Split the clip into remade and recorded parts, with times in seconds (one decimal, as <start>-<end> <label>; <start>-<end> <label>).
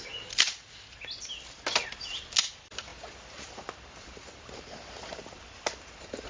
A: 0.0-6.3 recorded